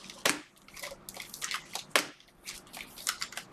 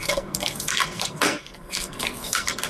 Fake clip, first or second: second